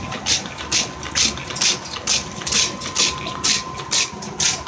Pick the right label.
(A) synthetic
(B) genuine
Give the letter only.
B